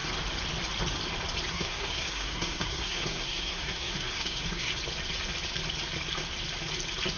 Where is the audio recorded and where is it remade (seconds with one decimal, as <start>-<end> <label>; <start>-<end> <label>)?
0.0-1.5 recorded; 1.5-4.7 remade; 4.7-7.2 recorded